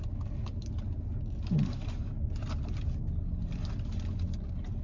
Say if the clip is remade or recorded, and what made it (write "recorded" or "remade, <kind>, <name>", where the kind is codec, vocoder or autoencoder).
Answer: recorded